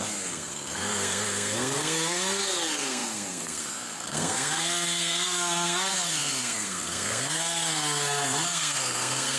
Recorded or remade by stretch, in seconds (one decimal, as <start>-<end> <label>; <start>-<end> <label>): 0.0-9.4 remade

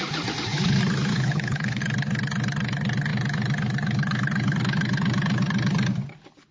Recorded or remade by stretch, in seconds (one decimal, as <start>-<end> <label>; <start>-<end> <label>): 0.0-1.1 recorded; 1.1-1.8 remade; 1.8-6.5 recorded

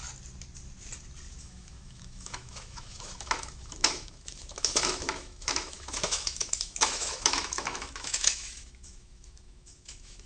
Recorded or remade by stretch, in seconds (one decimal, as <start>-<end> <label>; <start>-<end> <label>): 0.0-1.4 recorded; 1.4-10.3 remade

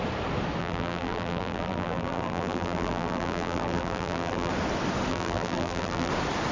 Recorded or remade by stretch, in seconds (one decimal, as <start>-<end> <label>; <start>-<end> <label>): 0.0-0.6 recorded; 0.6-4.5 remade; 4.5-5.1 recorded; 5.1-6.1 remade; 6.1-6.5 recorded